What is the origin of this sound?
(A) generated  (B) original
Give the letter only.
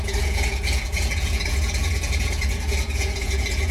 A